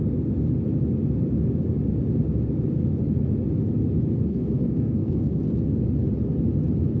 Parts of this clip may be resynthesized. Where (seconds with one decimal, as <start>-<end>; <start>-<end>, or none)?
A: 4.3-5.4